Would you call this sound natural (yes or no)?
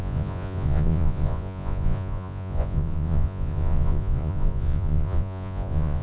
no